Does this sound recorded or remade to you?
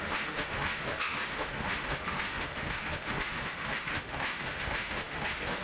remade